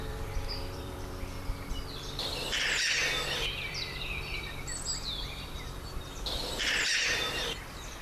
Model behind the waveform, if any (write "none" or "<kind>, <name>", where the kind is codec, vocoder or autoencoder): vocoder, BigVGAN v2